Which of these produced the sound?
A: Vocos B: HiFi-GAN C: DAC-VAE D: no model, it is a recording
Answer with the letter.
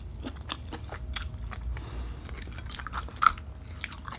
D